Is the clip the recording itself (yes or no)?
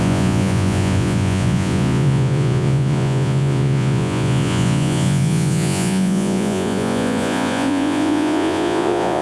no